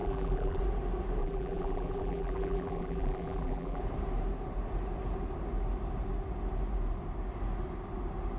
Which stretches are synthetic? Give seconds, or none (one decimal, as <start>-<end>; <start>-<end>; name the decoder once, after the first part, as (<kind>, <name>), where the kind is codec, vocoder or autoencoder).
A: 0.0-0.6 (vocoder, BigVGAN v2); 1.2-3.8

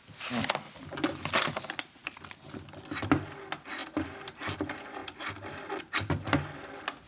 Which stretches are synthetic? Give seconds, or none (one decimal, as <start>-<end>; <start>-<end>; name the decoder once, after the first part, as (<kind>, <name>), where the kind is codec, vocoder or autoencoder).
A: none